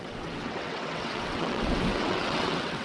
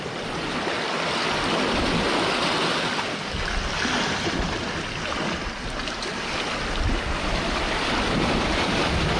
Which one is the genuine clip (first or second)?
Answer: second